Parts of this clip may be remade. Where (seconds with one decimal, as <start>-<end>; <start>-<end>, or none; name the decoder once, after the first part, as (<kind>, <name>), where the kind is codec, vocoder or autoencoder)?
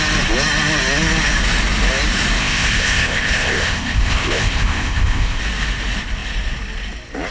2.4-5.4 (codec, ZipCodec)